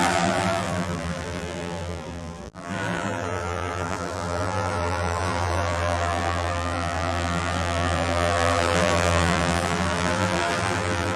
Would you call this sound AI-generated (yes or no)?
yes